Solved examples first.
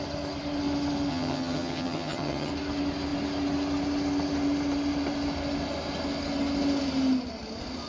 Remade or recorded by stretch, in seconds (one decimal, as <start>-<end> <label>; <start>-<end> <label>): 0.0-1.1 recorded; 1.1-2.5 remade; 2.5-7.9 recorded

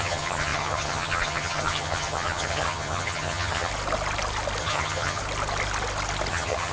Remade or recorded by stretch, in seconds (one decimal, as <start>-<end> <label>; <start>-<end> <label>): 0.0-3.7 remade; 3.7-4.6 recorded; 4.6-5.2 remade; 5.2-6.3 recorded; 6.3-6.7 remade

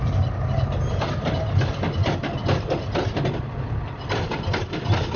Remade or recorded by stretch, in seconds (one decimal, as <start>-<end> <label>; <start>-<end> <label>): 0.0-5.2 recorded

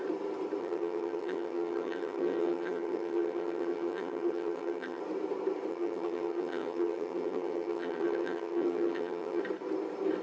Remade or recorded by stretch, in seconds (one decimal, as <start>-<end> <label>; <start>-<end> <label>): 0.0-0.6 recorded; 0.6-5.0 remade; 5.0-5.7 recorded; 5.7-9.4 remade; 9.4-10.2 recorded

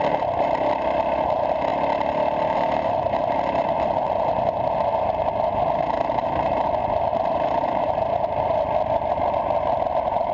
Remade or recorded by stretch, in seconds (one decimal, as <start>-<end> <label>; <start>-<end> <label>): 0.0-10.3 recorded

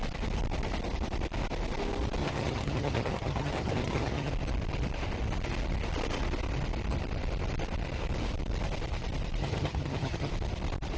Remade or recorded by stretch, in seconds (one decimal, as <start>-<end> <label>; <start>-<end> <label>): 0.0-2.2 recorded; 2.2-4.3 remade; 4.3-9.4 recorded; 9.4-10.3 remade; 10.3-11.0 recorded

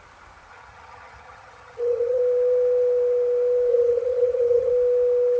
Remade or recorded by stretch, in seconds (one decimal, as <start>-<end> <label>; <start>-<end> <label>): 0.0-0.5 recorded; 0.5-2.2 remade; 2.2-3.7 recorded; 3.7-4.7 remade; 4.7-5.4 recorded